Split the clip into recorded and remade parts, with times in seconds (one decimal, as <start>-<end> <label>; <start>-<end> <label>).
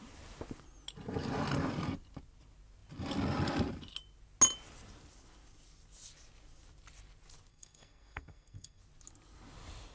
0.0-7.5 recorded; 7.5-8.8 remade; 8.8-9.9 recorded